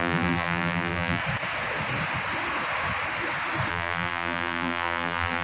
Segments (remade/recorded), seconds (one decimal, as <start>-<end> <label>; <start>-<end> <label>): 0.0-1.2 remade; 1.2-3.7 recorded; 3.7-5.4 remade